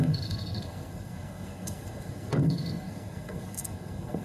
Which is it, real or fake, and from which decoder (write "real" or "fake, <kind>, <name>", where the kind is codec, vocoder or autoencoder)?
fake, codec, SNAC